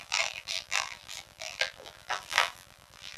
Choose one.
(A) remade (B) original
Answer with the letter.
A